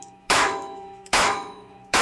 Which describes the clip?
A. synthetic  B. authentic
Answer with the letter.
A